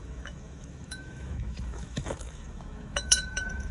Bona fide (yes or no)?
no